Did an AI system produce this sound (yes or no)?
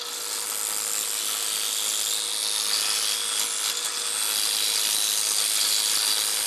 no